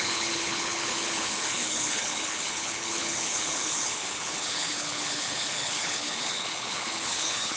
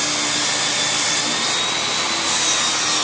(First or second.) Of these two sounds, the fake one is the first